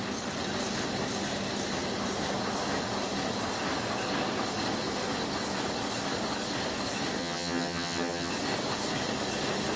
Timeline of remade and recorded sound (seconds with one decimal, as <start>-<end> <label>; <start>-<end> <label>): 0.0-7.2 recorded; 7.2-8.3 remade; 8.3-9.8 recorded